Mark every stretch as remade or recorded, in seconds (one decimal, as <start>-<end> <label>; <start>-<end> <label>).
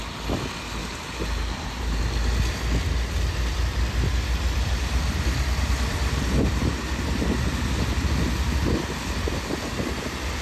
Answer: 0.0-0.8 recorded; 0.8-2.0 remade; 2.0-10.4 recorded